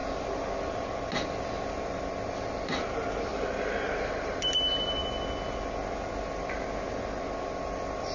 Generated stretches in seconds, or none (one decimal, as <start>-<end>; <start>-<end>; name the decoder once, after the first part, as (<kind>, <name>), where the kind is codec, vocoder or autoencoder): 3.3-4.4 (vocoder, BigVGAN v2)